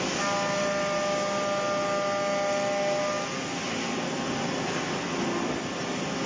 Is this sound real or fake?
real